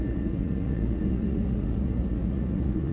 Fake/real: fake